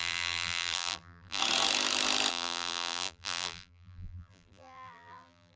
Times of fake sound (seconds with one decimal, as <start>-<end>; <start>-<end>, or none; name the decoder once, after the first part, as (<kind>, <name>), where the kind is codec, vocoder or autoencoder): 0.0-1.4 (vocoder, BigVGAN v2); 2.3-5.6